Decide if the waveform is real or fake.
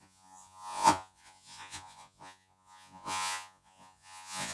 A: fake